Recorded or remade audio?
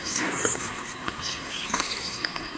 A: remade